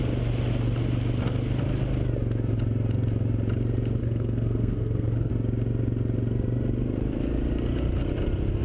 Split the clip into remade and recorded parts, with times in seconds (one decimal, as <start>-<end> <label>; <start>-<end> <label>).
0.0-4.0 recorded; 4.0-5.3 remade; 5.3-8.6 recorded